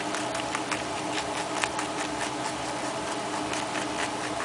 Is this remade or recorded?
recorded